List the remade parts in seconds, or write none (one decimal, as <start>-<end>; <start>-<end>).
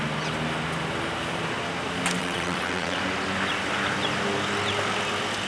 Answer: 2.2-3.0